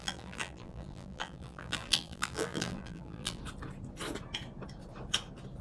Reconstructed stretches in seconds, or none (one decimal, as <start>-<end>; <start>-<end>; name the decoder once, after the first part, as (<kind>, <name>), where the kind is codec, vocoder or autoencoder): 0.0-3.4 (vocoder, BigVGAN v2)